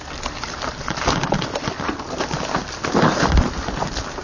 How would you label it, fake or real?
real